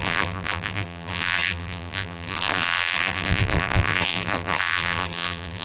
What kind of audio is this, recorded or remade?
remade